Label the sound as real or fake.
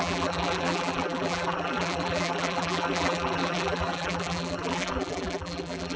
fake